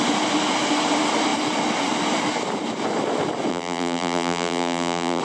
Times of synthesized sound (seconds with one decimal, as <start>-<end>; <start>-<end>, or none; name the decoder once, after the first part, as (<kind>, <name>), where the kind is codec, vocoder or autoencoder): 3.5-5.2 (vocoder, BigVGAN v2)